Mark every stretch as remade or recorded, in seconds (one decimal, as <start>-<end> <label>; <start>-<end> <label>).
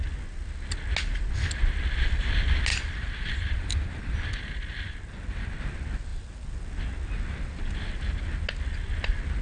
0.0-2.7 recorded; 2.7-5.6 remade; 5.6-6.1 recorded; 6.1-6.8 remade; 6.8-9.4 recorded